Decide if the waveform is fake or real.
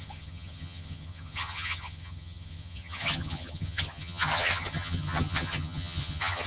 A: fake